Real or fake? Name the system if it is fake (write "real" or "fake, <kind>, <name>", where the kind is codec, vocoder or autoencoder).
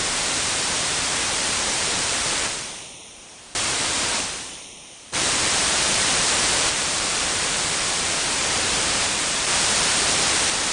fake, vocoder, BigVGAN v2